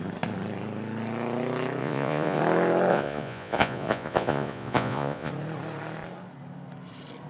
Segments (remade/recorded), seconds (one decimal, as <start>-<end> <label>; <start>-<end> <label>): 0.0-1.8 recorded; 1.8-2.4 remade; 2.4-2.9 recorded; 2.9-5.3 remade; 5.3-7.3 recorded